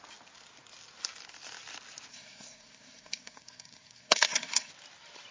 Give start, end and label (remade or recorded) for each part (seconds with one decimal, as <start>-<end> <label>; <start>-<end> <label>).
0.0-2.1 recorded; 2.1-4.7 remade; 4.7-5.3 recorded